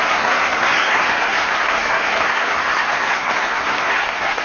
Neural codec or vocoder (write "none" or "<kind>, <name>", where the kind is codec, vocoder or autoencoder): codec, SNAC